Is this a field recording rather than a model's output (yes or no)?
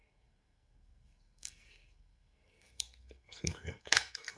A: no